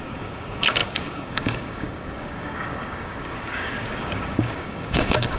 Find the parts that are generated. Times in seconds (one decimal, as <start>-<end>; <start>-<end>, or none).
0.0-5.4